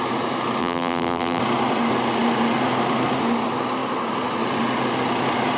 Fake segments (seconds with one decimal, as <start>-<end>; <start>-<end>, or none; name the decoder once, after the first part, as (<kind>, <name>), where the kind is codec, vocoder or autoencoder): 0.6-1.4 (vocoder, BigVGAN v2)